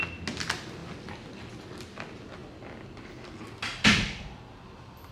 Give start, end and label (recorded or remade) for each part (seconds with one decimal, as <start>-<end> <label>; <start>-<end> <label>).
0.0-5.1 recorded